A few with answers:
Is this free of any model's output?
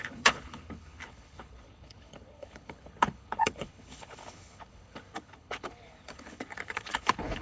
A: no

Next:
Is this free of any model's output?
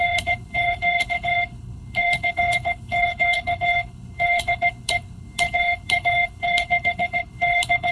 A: no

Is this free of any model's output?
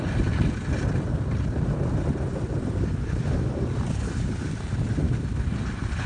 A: yes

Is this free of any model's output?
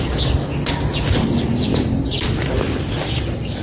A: yes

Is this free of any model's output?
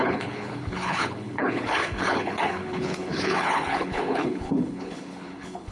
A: no